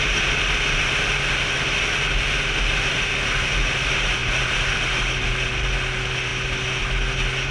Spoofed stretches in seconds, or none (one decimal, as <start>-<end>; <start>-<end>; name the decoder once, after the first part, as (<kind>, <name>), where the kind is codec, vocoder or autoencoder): none